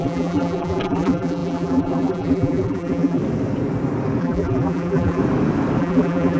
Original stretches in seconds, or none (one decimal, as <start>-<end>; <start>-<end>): 3.2-4.2; 5.2-5.8